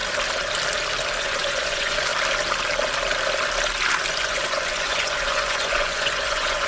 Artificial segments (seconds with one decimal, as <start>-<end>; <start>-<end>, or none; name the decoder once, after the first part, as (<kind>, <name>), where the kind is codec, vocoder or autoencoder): 1.2-2.1 (vocoder, Vocos); 4.1-6.7